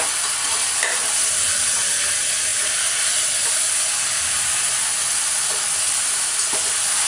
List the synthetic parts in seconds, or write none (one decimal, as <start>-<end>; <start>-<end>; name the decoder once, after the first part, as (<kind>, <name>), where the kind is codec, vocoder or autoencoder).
none